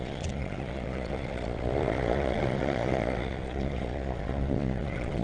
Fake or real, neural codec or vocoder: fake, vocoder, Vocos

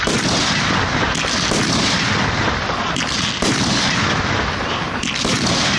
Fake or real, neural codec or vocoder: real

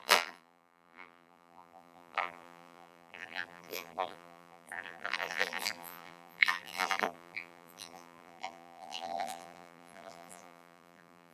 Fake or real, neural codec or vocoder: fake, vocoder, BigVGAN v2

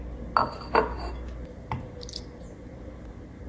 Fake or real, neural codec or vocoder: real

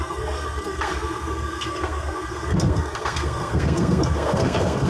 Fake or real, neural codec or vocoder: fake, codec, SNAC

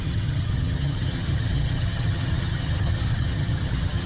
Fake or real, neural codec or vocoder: fake, vocoder, HiFi-GAN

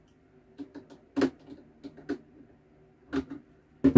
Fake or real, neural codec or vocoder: real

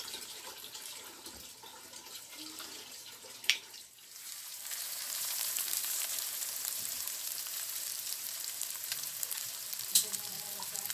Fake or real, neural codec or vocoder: fake, vocoder, BigVGAN v2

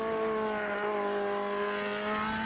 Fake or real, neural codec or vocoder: real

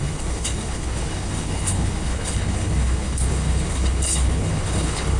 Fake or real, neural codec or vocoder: fake, codec, HILCodec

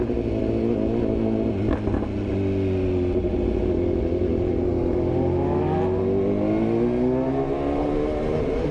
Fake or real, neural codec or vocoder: real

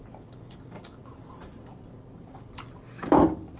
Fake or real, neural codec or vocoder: real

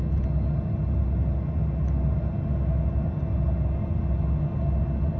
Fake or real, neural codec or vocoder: real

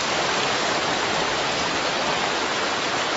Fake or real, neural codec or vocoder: real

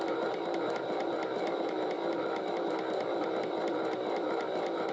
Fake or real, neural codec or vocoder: real